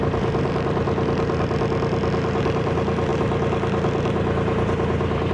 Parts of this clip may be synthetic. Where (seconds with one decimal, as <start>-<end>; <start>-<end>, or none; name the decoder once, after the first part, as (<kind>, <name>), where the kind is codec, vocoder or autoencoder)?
none